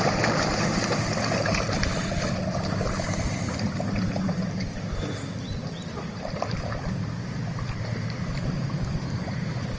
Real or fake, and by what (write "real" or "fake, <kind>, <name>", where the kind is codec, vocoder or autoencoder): fake, vocoder, BigVGAN v2